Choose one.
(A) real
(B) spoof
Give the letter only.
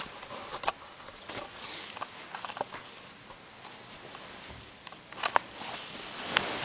A